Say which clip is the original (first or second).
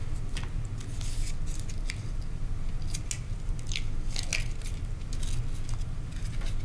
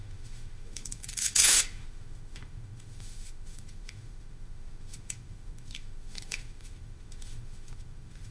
first